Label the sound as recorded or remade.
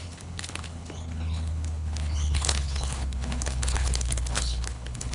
remade